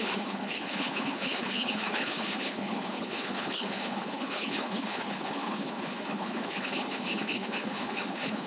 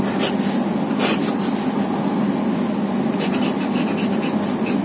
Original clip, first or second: second